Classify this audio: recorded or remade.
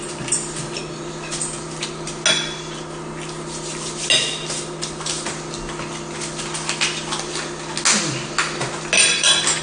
recorded